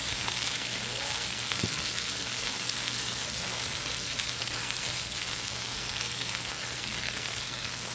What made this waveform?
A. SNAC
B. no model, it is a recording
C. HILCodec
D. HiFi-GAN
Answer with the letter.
A